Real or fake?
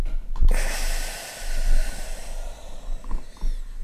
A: real